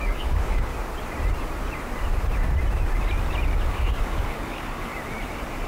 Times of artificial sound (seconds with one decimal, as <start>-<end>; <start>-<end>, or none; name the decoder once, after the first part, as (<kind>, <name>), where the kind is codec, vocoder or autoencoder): 0.0-0.7 (codec, DAC); 3.7-4.9